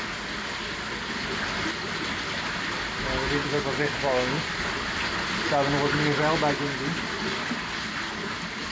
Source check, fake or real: real